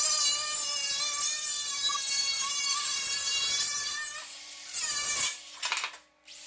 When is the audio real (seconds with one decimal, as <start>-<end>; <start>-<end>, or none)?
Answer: 0.0-1.7; 5.6-6.5